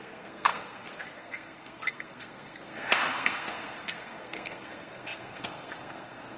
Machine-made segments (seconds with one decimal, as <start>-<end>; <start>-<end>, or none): 0.0-6.4